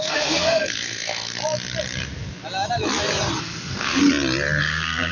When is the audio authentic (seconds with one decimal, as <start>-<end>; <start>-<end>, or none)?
1.4-3.4; 4.0-4.6